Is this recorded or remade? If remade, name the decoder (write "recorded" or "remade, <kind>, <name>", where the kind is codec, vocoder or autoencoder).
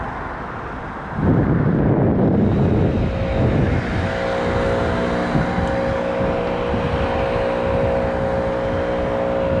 recorded